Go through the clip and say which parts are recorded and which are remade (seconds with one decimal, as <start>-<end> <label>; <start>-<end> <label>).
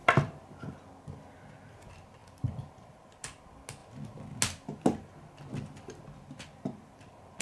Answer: 0.0-7.4 recorded